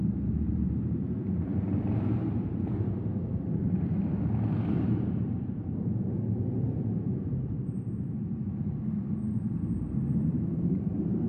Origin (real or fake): fake